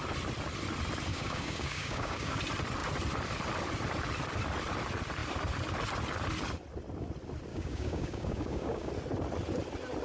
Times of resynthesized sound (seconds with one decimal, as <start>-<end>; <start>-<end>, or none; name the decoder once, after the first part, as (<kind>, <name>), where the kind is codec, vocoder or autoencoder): 1.1-2.4 (codec, DAC); 7.5-8.9